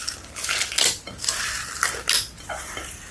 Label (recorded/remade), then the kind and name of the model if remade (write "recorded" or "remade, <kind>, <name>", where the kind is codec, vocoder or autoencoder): recorded